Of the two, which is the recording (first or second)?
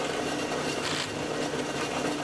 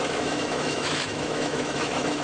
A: first